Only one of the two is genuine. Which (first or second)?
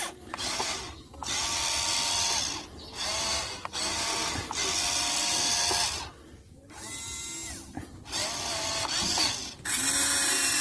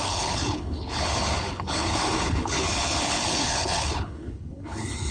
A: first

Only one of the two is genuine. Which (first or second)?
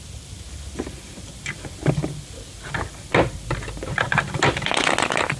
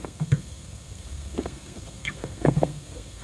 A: first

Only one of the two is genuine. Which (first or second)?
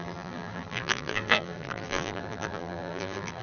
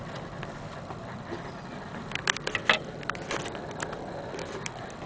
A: second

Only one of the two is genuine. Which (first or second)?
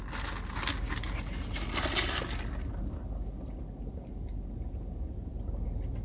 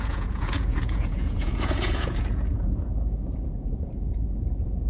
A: first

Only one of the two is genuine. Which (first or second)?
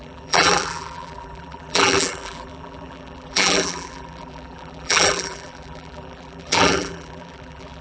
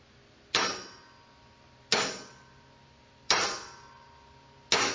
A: second